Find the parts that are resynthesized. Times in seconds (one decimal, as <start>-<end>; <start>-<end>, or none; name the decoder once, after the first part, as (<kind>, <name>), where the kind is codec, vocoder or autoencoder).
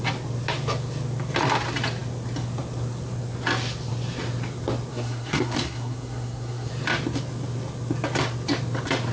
4.9-6.7 (codec, SNAC)